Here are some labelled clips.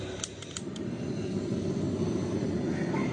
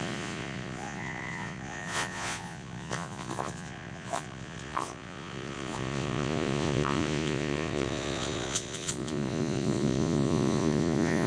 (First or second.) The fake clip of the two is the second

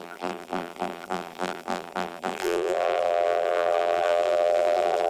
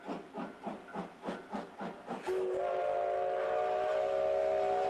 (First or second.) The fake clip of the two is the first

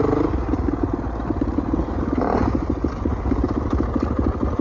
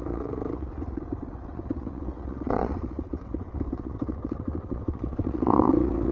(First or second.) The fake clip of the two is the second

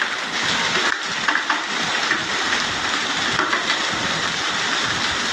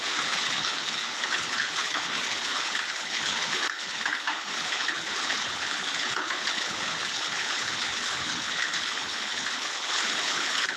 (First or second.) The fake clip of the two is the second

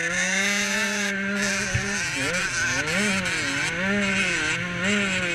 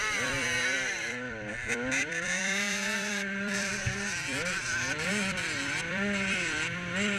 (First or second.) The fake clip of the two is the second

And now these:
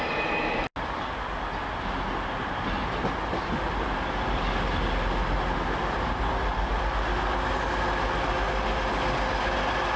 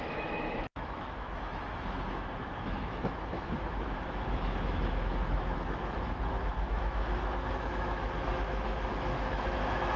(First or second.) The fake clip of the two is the second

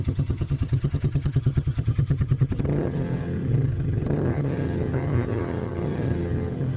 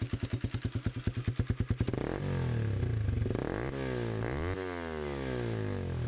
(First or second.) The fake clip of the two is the first